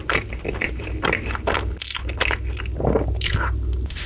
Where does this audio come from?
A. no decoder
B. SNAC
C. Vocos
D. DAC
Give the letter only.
A